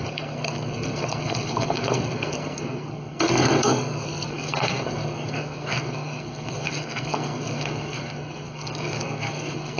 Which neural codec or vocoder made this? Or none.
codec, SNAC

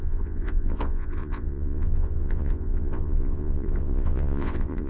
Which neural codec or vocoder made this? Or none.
vocoder, Vocos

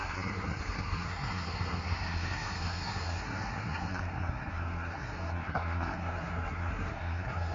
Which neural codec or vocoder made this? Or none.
codec, SNAC